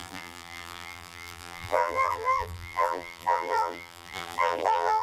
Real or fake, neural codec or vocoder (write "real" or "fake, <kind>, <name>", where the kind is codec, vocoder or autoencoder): fake, vocoder, BigVGAN v2